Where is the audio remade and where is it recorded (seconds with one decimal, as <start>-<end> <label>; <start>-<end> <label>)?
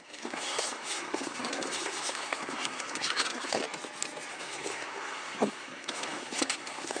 0.0-3.6 remade; 3.6-4.3 recorded; 4.3-7.0 remade